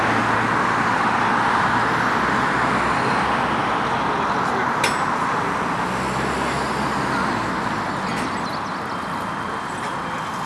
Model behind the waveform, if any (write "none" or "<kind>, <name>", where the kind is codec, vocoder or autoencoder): none